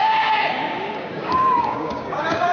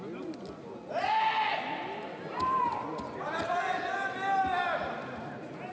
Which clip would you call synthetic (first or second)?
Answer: first